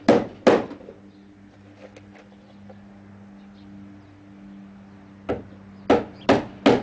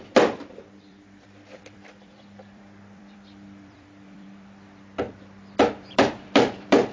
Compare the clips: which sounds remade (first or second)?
second